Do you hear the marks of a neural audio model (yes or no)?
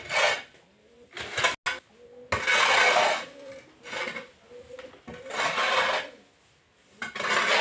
no